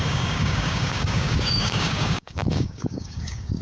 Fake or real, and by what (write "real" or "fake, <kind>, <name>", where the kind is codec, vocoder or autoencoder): fake, codec, DAC